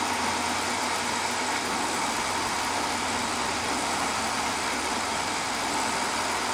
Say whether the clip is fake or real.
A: real